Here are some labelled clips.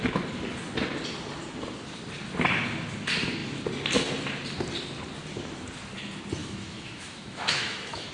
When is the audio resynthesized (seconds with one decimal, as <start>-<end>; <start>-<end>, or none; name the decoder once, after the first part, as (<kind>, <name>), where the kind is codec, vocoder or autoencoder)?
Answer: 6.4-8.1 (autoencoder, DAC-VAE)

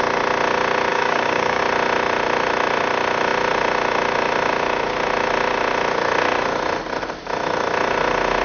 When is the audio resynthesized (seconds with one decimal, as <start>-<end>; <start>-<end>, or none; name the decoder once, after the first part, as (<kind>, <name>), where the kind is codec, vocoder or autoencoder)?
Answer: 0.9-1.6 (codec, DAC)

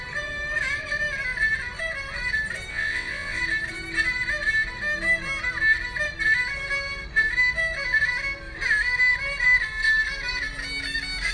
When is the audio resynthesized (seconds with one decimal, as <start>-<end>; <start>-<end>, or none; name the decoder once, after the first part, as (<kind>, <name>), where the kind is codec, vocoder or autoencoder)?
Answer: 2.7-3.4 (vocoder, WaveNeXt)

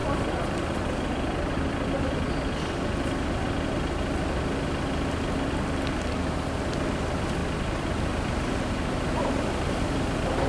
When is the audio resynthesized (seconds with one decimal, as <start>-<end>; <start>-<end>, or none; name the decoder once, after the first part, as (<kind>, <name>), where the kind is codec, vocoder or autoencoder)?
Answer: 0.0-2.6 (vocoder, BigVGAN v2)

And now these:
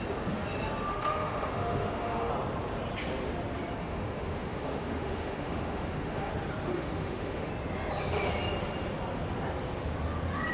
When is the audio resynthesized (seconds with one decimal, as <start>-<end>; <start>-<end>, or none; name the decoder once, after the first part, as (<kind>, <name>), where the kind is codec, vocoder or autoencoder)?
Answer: 0.9-2.3 (autoencoder, DAC-VAE); 3.8-6.3; 6.7-7.5

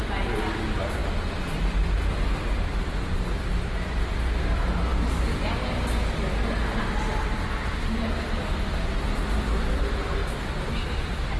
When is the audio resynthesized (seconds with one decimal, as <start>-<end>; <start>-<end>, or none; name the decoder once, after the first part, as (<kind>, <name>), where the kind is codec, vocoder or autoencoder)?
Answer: none

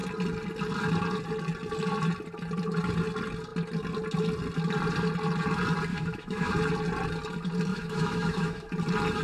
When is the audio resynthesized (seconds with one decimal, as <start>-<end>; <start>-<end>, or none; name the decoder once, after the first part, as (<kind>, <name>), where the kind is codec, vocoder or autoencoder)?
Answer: 5.9-6.5 (autoencoder, DAC-VAE); 7.7-8.7

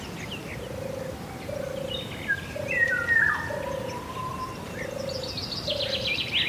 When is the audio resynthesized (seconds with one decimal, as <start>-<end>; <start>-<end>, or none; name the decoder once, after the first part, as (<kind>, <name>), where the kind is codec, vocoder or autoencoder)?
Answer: none